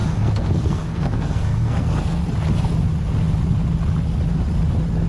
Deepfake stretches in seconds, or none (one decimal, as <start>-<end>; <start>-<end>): 0.0-2.2

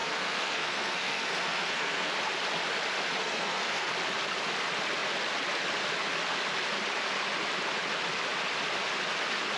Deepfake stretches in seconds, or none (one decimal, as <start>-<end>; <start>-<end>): 0.0-2.1; 3.2-3.9

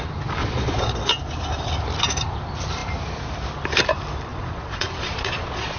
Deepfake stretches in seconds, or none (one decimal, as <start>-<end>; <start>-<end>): 0.4-1.1; 4.3-5.8

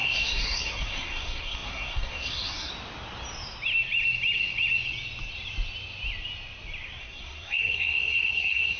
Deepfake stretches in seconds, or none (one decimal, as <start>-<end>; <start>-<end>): 0.0-2.7; 7.0-8.8

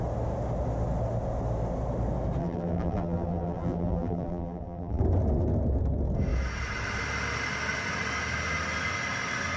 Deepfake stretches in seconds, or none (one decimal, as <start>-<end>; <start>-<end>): 2.4-5.0

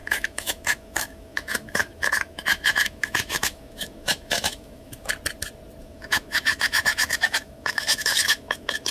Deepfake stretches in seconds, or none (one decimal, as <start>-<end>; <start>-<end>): 0.0-5.1; 5.8-8.9

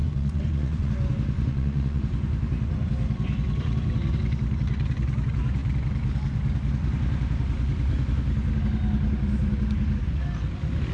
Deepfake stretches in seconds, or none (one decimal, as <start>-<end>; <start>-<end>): 0.0-0.9; 1.5-2.0